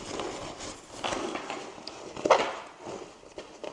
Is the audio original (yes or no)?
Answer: yes